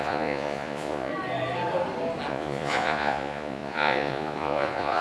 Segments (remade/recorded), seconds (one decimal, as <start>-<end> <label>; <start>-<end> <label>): 0.0-1.1 remade; 1.1-2.3 recorded; 2.3-5.0 remade